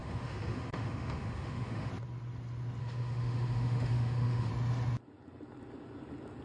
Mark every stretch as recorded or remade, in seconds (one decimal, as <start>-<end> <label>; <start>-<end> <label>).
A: 0.0-1.9 remade; 1.9-2.8 recorded; 2.8-4.5 remade; 4.5-6.4 recorded